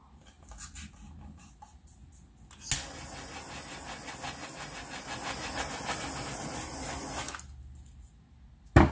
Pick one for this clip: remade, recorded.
recorded